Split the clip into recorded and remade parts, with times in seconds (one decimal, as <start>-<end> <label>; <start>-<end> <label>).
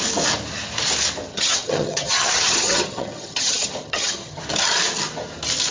0.0-1.3 recorded; 1.3-4.4 remade; 4.4-5.7 recorded